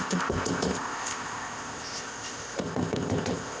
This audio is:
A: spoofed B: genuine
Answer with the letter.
A